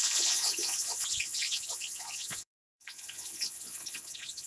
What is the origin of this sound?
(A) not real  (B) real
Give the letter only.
A